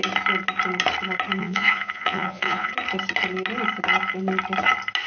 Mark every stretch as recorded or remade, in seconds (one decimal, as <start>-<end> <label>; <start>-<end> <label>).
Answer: 0.0-1.4 recorded; 1.4-2.7 remade; 2.7-5.1 recorded